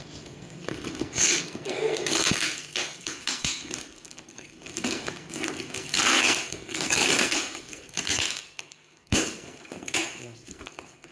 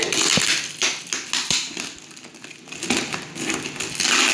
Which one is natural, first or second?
second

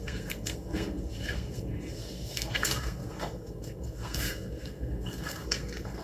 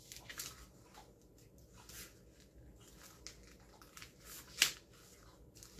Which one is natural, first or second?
second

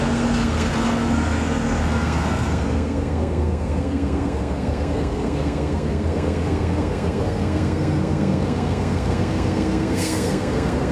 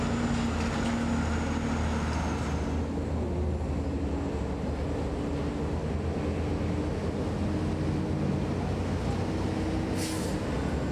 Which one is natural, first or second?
second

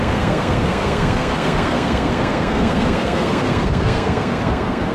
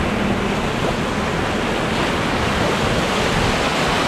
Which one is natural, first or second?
second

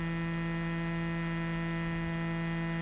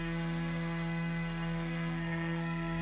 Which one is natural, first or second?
first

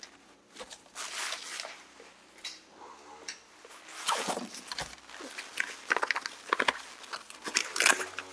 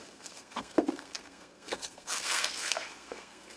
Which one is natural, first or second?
first